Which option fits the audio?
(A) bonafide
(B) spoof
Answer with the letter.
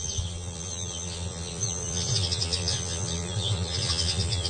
B